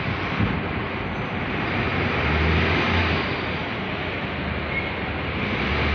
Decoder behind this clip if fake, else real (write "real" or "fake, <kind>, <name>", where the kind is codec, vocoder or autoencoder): real